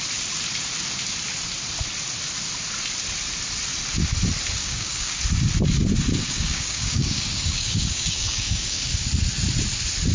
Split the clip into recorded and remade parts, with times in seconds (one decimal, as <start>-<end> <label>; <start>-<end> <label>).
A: 0.0-4.6 recorded; 4.6-5.2 remade; 5.2-6.2 recorded; 6.2-9.1 remade; 9.1-10.1 recorded